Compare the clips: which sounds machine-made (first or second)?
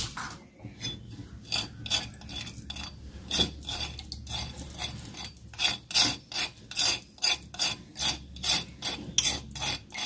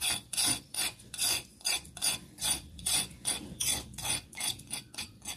second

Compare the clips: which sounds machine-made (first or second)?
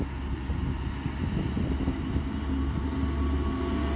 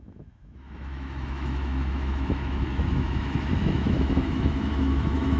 second